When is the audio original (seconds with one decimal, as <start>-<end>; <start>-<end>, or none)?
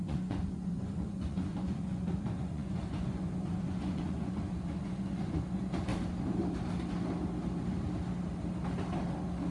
5.9-9.5